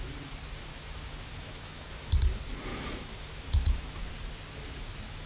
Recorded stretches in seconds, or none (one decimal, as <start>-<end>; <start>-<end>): 0.0-0.7; 2.1-2.7; 4.1-5.3